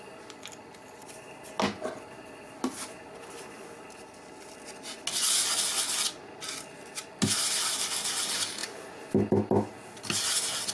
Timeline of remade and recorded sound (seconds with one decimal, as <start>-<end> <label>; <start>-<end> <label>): 0.0-10.7 recorded